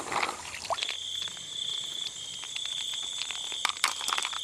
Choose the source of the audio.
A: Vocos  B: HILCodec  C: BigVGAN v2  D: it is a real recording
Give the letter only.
D